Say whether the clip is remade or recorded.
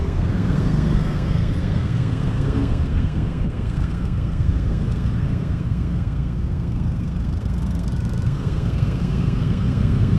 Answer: remade